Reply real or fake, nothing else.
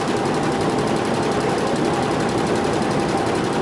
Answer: real